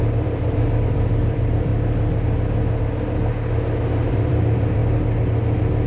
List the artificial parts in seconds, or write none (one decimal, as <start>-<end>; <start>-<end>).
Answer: 0.0-1.7; 4.1-4.8